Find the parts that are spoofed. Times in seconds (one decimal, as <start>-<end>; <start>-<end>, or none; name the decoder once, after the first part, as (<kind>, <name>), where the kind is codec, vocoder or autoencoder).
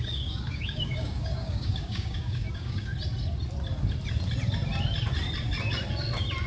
0.0-2.9 (codec, DAC)